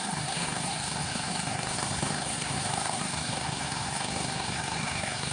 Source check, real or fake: fake